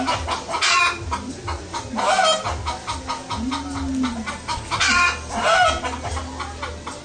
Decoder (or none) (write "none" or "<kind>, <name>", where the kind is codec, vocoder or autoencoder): none